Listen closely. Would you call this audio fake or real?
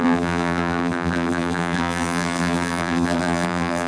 fake